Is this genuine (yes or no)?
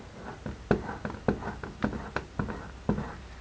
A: yes